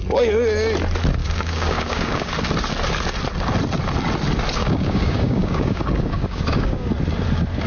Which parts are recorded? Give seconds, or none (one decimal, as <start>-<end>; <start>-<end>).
0.0-1.2; 2.3-4.6; 6.9-7.7